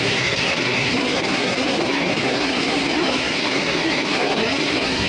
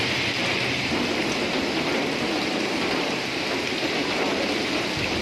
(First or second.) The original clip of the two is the second